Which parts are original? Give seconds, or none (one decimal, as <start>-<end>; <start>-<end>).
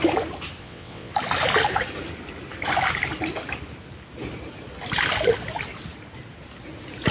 0.0-0.6; 1.1-7.1